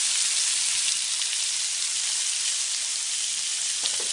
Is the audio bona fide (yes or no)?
yes